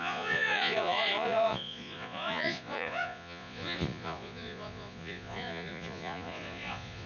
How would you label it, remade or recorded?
remade